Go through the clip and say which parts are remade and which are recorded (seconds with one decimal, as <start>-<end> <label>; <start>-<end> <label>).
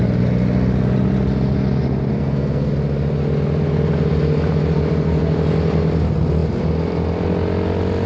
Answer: 0.0-2.1 recorded; 2.1-2.7 remade; 2.7-8.1 recorded